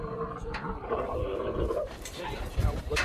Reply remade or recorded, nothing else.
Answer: remade